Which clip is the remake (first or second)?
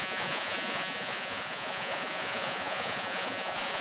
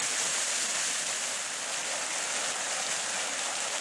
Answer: first